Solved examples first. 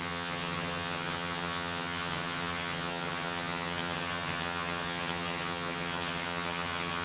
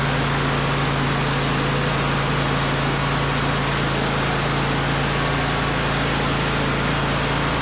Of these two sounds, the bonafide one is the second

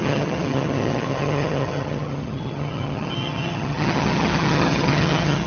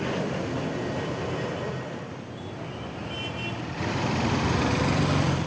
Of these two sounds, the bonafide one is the second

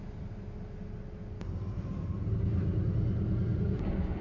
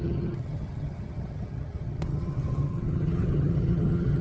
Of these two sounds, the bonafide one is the first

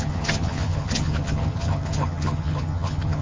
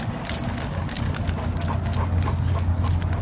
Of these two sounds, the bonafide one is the second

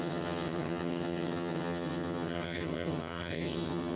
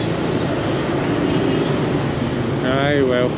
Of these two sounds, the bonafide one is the second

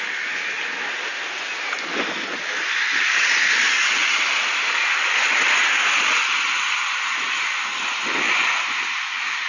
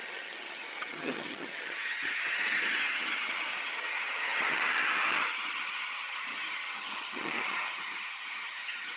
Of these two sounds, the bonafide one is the first